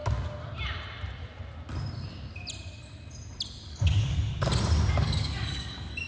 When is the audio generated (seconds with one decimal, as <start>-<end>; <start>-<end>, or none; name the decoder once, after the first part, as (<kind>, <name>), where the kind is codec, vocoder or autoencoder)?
3.7-4.3 (codec, DAC); 4.9-6.1